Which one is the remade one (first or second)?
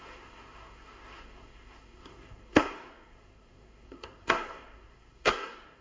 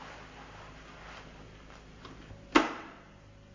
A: first